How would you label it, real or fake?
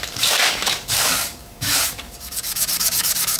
fake